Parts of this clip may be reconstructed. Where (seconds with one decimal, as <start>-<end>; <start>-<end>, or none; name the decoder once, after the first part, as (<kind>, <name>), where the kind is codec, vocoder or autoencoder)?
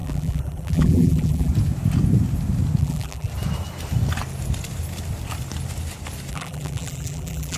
0.0-1.5 (vocoder, BigVGAN v2); 2.8-3.3; 6.3-7.6